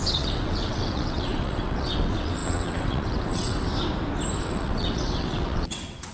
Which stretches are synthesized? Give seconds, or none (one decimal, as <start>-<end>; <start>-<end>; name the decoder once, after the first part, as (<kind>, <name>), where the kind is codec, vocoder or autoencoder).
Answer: 0.0-3.7 (vocoder, WaveNeXt); 4.4-6.1